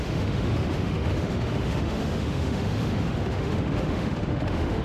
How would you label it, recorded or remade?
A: remade